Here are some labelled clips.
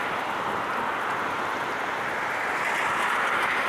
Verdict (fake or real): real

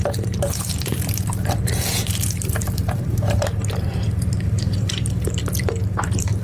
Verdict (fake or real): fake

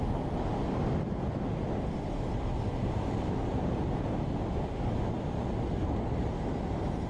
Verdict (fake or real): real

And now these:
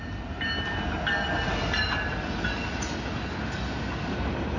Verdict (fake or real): real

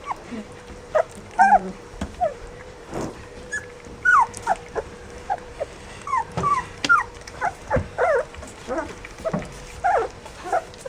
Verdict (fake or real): fake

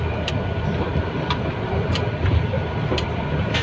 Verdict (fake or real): fake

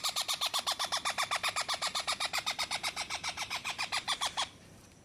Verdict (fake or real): fake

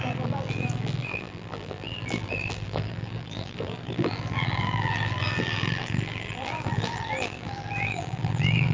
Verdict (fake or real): fake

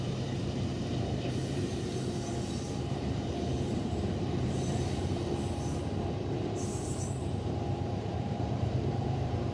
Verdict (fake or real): fake